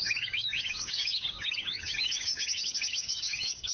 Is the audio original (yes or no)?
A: no